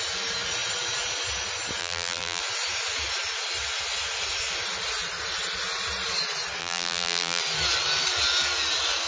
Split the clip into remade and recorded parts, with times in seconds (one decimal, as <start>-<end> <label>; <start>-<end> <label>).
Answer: 0.0-1.8 recorded; 1.8-2.4 remade; 2.4-6.6 recorded; 6.6-7.4 remade; 7.4-9.1 recorded